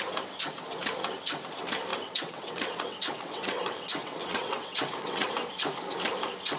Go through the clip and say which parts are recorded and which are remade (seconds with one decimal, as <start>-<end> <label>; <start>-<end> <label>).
0.0-1.9 recorded; 1.9-5.3 remade; 5.3-6.6 recorded